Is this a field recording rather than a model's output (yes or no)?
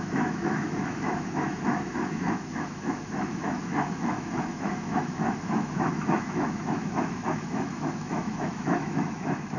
no